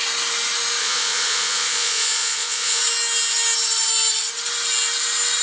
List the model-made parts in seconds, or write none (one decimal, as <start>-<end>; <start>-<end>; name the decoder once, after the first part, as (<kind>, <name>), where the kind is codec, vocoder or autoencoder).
0.8-2.8 (vocoder, Vocos)